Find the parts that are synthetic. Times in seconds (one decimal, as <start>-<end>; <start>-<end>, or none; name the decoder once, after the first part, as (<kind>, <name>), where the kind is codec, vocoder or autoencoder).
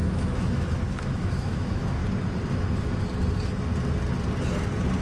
0.0-2.0 (autoencoder, DAC-VAE)